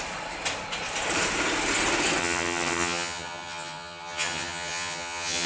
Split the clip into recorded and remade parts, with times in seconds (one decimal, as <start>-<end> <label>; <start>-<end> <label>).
0.0-2.2 recorded; 2.2-5.5 remade